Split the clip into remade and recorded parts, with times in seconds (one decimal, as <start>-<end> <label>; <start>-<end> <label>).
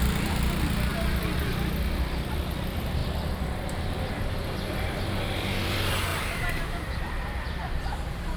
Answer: 0.0-0.9 remade; 0.9-1.9 recorded; 1.9-8.4 remade